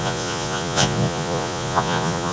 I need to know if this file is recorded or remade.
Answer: remade